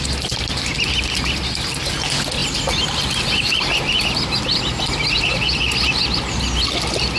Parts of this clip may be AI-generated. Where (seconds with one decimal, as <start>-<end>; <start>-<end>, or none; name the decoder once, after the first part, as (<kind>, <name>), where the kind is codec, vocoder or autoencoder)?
none